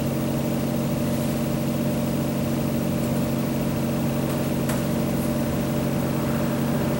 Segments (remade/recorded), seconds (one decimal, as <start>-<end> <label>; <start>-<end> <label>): 0.0-7.0 recorded